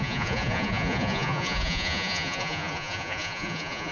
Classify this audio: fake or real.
fake